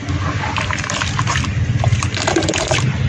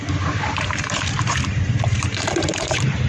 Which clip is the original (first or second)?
first